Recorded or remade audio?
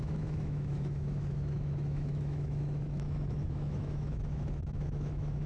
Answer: remade